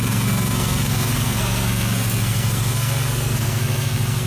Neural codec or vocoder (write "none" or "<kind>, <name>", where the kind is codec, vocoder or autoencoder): codec, SNAC